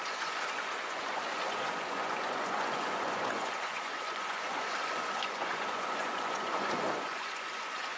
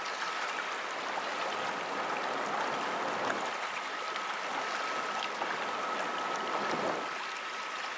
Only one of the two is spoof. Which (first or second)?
first